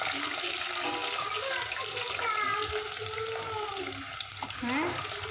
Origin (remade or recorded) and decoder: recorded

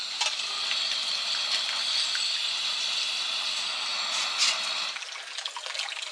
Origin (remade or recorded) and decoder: recorded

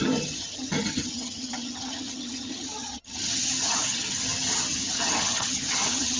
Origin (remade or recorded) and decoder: remade, vocoder, HiFi-GAN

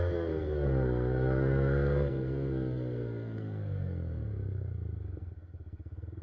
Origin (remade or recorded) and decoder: remade, codec, SNAC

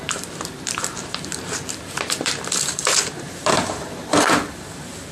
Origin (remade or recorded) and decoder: remade, vocoder, BigVGAN v2